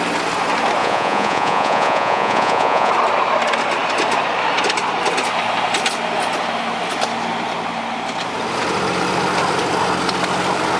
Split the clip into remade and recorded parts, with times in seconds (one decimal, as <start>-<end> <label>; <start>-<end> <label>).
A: 0.0-0.8 recorded; 0.8-2.9 remade; 2.9-10.8 recorded